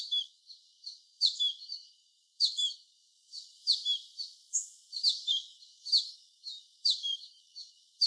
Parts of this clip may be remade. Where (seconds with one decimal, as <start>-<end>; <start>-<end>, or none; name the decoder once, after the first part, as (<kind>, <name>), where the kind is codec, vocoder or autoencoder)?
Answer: 0.0-3.6 (codec, DAC); 4.9-8.1